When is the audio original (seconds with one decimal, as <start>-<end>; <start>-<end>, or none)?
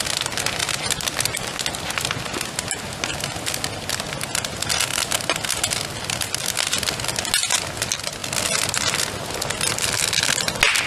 0.0-10.9